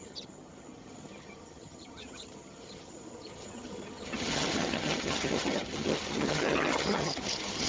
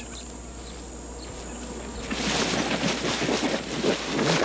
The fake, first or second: first